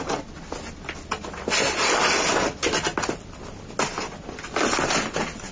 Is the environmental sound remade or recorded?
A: recorded